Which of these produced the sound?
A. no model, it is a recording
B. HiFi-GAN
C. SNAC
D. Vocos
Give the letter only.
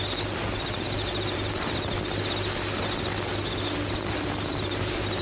A